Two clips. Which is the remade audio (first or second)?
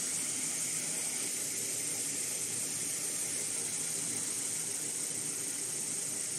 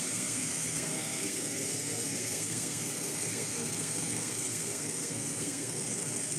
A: second